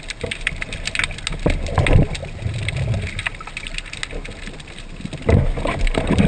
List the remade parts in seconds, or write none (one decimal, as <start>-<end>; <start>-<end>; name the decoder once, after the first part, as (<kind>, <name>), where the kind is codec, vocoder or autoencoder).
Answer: none